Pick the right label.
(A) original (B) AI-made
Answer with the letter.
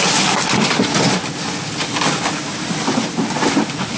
A